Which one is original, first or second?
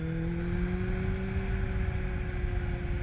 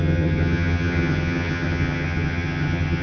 first